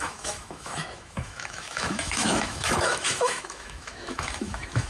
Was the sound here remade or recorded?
remade